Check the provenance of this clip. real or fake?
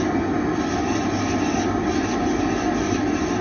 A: real